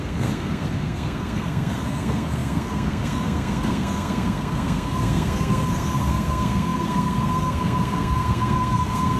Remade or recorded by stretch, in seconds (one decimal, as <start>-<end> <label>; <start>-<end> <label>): 0.0-9.2 remade